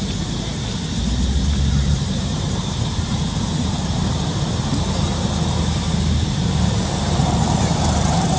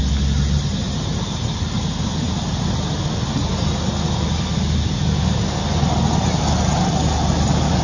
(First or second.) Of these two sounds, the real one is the second